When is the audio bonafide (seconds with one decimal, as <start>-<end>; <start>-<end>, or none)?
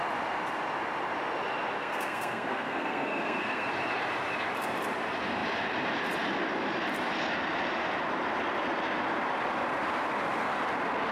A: 0.0-1.8; 3.7-11.1